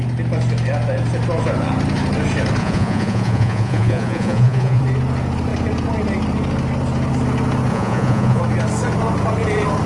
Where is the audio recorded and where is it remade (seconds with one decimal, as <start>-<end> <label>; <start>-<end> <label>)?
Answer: 0.0-2.6 recorded; 2.6-4.8 remade; 4.8-7.7 recorded; 7.7-8.4 remade; 8.4-9.9 recorded